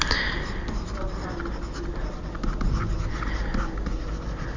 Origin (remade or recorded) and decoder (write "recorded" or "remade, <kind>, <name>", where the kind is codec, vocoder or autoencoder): recorded